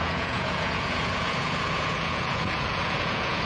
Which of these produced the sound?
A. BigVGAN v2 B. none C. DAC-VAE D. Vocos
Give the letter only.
D